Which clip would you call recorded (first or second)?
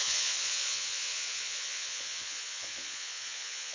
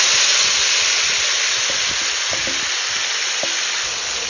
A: second